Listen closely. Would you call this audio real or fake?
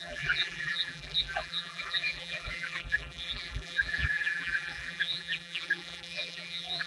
fake